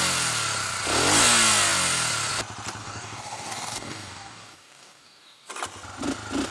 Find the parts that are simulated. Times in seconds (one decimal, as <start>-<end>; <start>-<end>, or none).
2.8-5.5